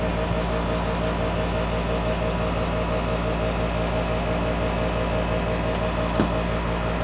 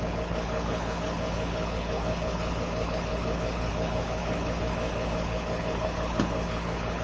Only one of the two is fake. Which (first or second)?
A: second